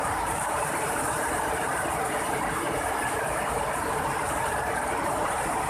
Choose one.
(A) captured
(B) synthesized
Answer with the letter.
B